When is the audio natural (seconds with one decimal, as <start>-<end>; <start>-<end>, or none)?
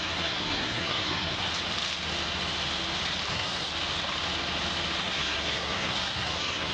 1.5-3.3; 3.7-5.0